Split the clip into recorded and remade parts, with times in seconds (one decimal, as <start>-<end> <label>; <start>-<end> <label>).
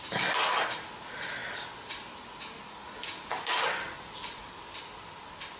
0.0-5.6 recorded